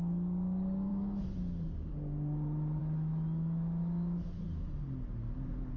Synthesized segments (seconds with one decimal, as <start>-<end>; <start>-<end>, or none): 0.9-1.9; 2.8-4.8